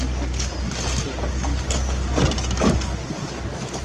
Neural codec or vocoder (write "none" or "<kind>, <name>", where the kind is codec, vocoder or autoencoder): none